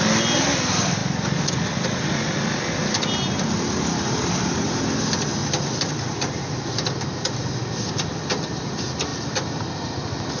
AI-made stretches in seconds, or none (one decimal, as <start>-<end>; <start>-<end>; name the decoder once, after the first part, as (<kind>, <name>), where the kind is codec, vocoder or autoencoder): none